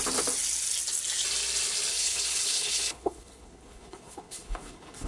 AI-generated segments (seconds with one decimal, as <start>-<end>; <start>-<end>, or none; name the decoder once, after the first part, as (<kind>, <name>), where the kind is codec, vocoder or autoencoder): 1.9-5.1 (codec, HILCodec)